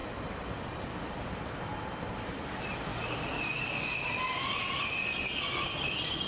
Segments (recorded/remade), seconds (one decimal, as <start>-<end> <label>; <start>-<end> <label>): 0.0-6.3 recorded